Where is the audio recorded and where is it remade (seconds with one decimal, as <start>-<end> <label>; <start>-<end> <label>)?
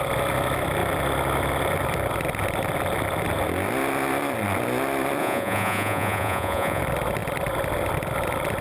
0.0-5.2 recorded; 5.2-6.8 remade; 6.8-8.6 recorded